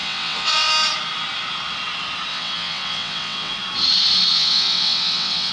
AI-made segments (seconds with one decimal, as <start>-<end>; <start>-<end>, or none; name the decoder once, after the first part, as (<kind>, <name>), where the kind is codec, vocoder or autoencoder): 0.0-0.7 (vocoder, WaveNeXt); 2.3-3.5; 4.3-5.5